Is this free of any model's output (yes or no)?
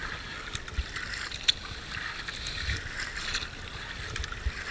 yes